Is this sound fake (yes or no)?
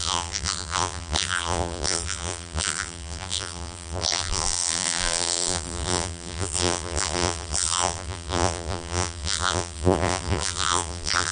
yes